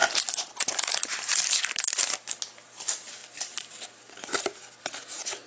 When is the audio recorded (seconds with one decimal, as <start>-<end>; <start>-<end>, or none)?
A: 1.7-3.2; 4.0-5.5